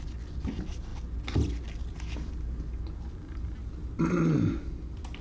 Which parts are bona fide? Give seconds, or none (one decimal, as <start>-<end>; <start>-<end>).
0.0-5.2